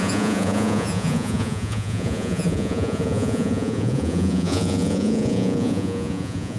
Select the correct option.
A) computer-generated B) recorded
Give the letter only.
A